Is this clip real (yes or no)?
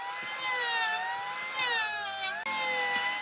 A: yes